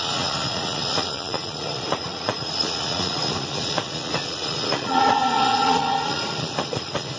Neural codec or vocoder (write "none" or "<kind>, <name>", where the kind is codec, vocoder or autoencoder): vocoder, Vocos